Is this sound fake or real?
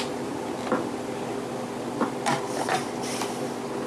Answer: real